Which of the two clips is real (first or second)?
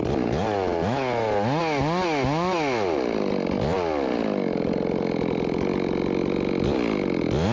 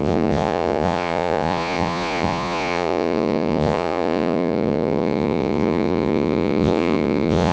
first